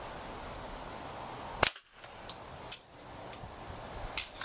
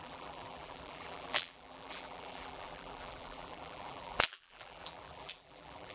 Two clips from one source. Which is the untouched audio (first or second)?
first